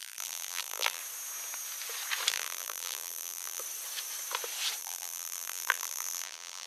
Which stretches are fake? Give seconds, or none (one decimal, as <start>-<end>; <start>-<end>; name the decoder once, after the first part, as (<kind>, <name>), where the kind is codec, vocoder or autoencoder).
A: 0.0-1.0 (vocoder, BigVGAN v2); 2.3-3.6; 4.8-6.7